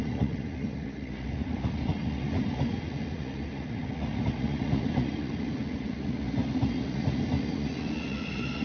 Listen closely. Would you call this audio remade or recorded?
remade